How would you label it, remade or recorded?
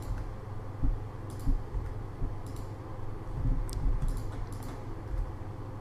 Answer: recorded